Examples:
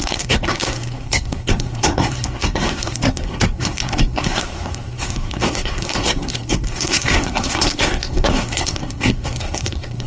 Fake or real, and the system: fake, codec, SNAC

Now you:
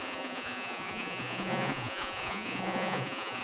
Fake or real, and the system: fake, vocoder, Vocos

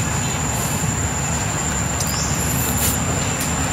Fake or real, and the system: real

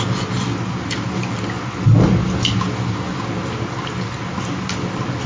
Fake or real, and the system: real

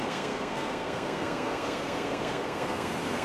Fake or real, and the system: fake, codec, SNAC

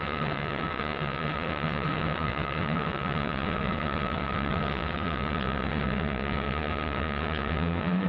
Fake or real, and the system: fake, vocoder, WaveNeXt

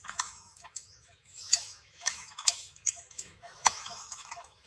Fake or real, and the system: fake, autoencoder, DAC-VAE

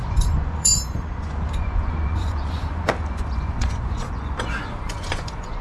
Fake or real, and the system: fake, vocoder, Vocos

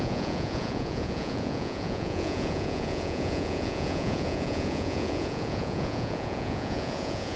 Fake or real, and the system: fake, vocoder, Vocos